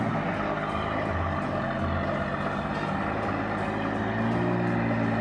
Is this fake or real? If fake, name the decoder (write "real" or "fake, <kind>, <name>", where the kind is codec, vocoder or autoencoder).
real